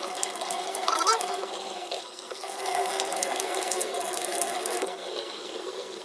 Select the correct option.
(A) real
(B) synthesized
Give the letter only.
B